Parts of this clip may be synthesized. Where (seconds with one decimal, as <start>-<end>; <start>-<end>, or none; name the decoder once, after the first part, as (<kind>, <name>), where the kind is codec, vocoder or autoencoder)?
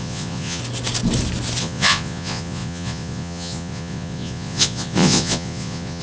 0.0-0.6 (vocoder, Vocos); 1.6-6.0